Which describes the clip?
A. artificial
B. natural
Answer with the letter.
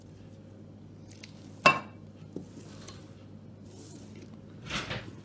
B